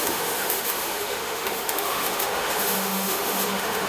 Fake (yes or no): yes